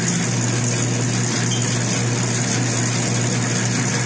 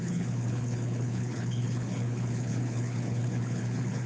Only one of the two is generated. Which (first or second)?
second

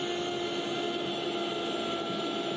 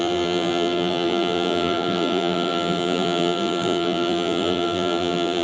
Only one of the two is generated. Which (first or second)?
second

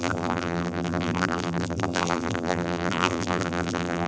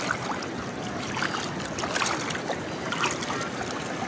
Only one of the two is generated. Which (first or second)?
first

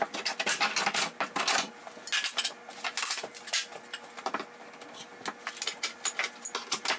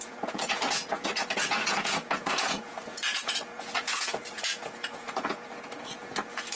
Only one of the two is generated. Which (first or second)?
second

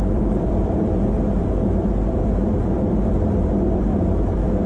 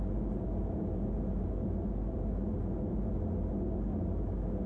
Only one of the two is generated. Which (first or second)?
first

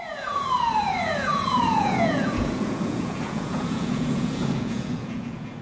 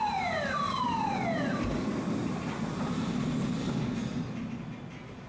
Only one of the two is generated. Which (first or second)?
first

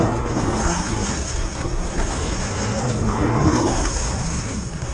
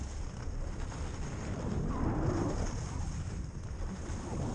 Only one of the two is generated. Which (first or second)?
first